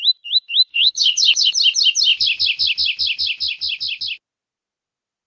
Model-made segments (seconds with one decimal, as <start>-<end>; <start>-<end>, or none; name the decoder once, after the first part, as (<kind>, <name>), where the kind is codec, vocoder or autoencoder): 0.7-1.5 (codec, HILCodec)